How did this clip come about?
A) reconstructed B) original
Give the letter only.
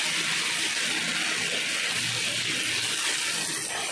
B